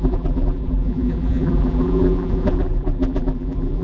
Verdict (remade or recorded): remade